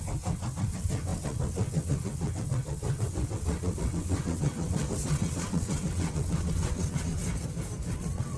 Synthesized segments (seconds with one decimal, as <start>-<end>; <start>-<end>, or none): 0.0-7.2; 7.9-8.4